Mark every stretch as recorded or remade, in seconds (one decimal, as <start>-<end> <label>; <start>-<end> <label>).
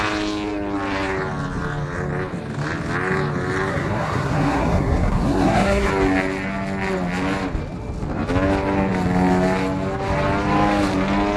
0.0-3.7 recorded; 3.7-5.9 remade; 5.9-11.4 recorded